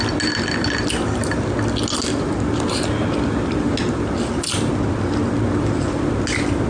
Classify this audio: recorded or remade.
recorded